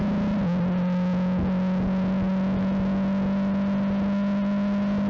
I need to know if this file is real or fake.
real